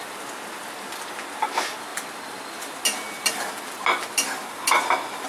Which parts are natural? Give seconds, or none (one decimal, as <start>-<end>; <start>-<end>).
0.0-5.3